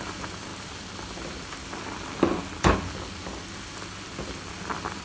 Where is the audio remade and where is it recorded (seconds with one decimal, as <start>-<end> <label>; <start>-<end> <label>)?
0.0-5.0 recorded